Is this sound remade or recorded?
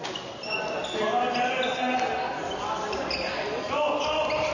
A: recorded